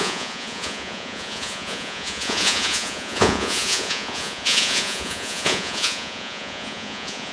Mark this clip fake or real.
fake